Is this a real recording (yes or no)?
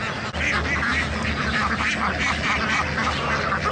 yes